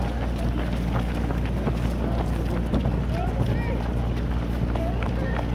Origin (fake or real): real